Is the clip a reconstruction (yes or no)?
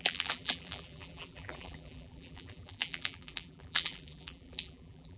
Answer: yes